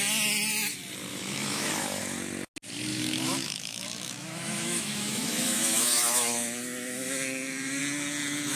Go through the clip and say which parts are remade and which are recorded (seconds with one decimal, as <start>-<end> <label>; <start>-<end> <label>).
0.0-1.1 recorded; 1.1-2.0 remade; 2.0-2.9 recorded; 2.9-7.8 remade; 7.8-8.6 recorded